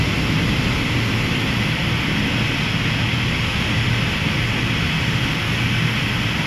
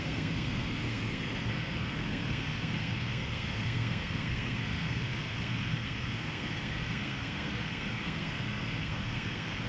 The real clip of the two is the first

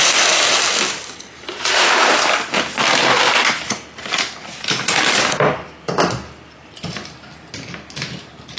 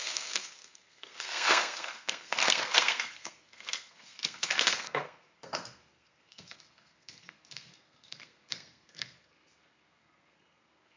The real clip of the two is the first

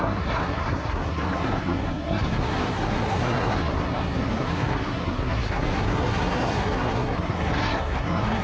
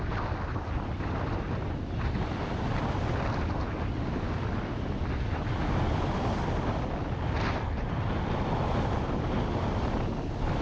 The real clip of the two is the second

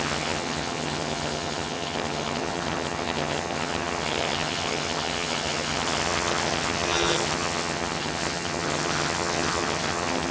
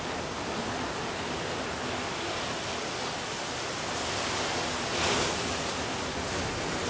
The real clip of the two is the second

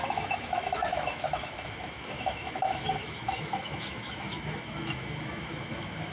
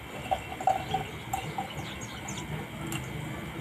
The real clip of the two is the second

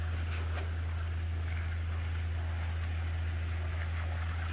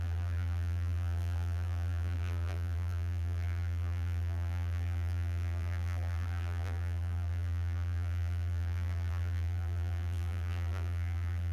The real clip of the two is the first